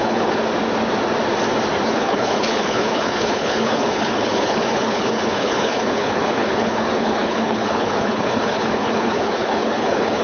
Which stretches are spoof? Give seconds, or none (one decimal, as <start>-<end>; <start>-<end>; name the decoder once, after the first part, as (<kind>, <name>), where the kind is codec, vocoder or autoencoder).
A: 0.0-0.4 (codec, HILCodec); 1.9-10.2